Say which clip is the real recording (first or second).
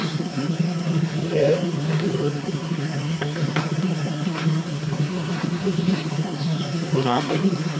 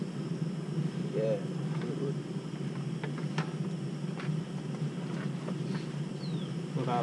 second